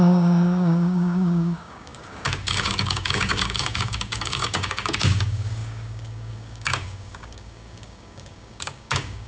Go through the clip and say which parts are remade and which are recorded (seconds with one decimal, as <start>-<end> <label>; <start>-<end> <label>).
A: 0.0-9.3 remade